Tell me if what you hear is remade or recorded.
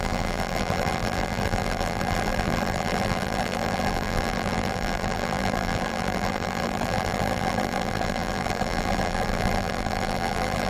remade